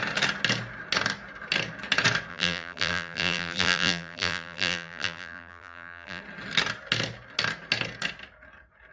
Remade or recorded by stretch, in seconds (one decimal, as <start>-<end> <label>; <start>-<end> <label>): 0.0-2.3 recorded; 2.3-6.2 remade; 6.2-8.9 recorded